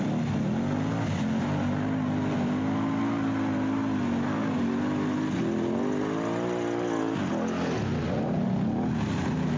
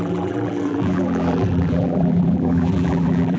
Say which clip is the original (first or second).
first